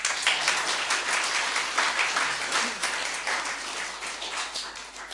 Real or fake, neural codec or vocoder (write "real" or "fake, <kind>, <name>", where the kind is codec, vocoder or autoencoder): real